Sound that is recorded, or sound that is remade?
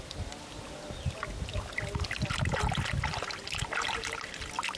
recorded